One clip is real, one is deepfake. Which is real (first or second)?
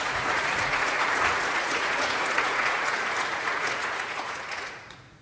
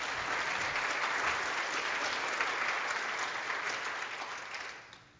second